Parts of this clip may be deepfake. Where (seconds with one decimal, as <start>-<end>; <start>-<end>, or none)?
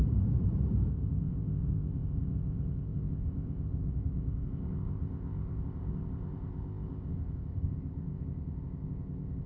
0.9-9.5